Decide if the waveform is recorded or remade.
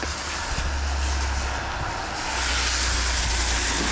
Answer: recorded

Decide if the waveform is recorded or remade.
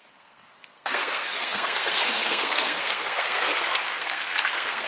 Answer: remade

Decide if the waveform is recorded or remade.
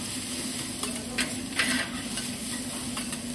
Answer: recorded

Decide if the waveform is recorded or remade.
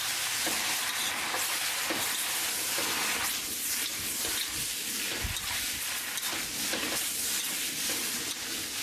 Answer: recorded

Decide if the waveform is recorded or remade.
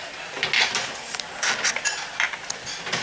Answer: recorded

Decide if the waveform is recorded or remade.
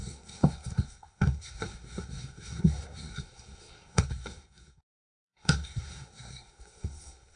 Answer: remade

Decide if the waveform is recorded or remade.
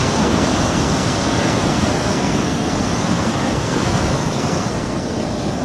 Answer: remade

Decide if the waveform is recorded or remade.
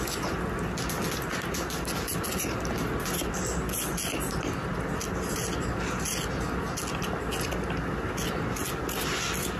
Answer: recorded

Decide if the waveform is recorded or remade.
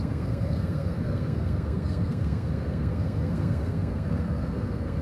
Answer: remade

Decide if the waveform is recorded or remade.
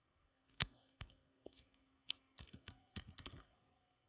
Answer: remade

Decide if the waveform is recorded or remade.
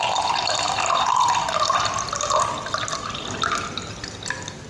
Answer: recorded